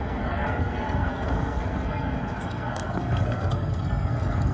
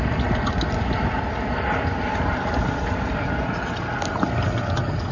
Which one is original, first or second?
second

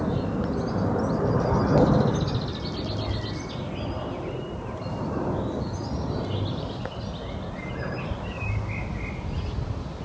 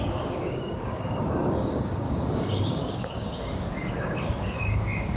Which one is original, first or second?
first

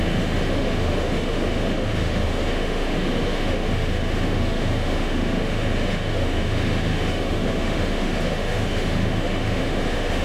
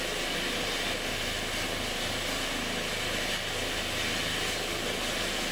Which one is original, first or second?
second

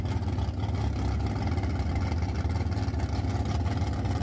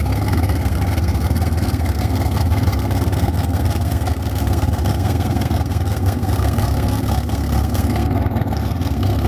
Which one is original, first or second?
first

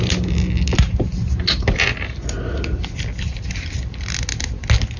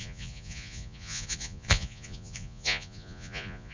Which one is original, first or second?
first